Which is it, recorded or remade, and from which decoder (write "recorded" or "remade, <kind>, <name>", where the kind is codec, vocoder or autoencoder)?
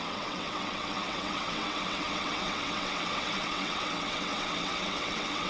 remade, vocoder, WaveNeXt